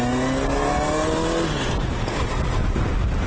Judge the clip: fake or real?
real